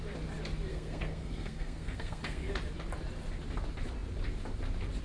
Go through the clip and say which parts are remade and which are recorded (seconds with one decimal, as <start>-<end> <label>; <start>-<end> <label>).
0.0-0.7 recorded; 0.7-2.5 remade; 2.5-5.0 recorded